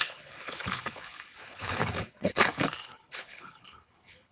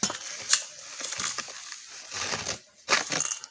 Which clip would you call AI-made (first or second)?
first